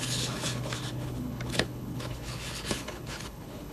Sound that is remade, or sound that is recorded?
remade